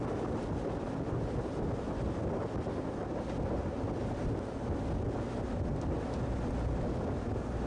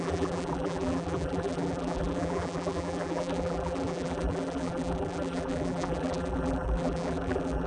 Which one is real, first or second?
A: first